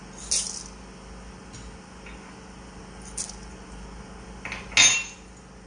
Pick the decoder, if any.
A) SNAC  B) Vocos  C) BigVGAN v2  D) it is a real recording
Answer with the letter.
D